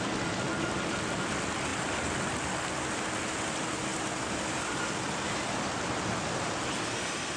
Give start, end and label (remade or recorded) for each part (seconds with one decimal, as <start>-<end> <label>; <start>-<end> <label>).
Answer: 0.0-7.4 recorded